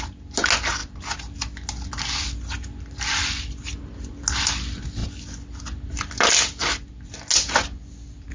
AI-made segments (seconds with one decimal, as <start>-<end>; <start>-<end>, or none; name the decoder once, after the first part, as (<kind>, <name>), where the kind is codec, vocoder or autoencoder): none